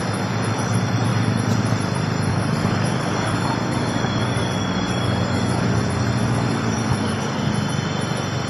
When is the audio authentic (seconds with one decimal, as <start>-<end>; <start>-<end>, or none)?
0.0-2.3; 5.8-6.2; 7.5-8.5